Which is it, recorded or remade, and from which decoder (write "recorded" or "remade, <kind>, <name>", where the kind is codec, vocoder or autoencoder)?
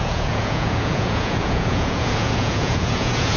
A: remade, vocoder, Vocos